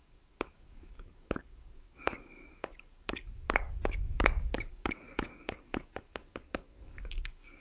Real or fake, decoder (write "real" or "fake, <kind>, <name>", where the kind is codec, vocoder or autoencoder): fake, codec, DAC